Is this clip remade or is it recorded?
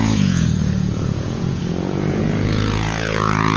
remade